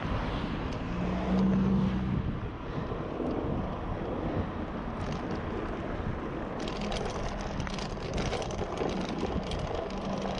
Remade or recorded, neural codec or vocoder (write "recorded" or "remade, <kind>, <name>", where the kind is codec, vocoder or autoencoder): recorded